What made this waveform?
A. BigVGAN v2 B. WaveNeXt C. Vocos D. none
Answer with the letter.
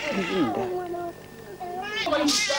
D